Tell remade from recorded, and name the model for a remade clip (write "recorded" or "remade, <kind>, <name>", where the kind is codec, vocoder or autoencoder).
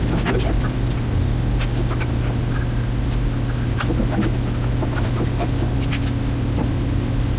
recorded